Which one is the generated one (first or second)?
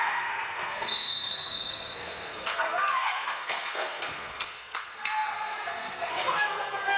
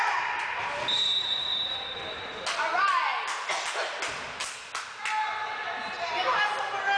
first